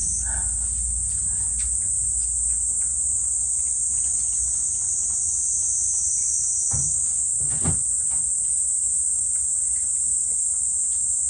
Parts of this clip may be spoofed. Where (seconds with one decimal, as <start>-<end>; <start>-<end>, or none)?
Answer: 2.9-4.4; 6.2-8.5